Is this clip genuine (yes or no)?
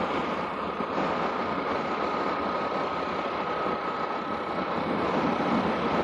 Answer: yes